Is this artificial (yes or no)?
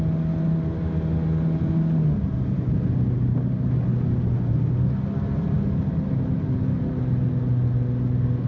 no